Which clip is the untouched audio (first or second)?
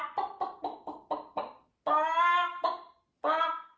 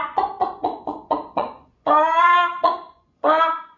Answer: first